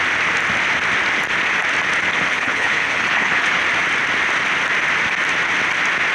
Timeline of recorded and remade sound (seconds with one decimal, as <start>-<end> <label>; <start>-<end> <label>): 0.0-2.3 recorded; 2.3-3.6 remade; 3.6-6.1 recorded